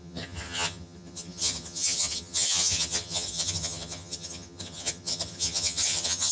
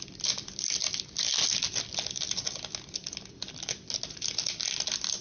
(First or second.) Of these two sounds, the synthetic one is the first